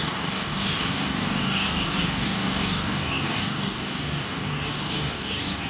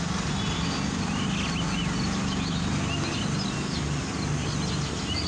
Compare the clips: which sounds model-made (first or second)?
first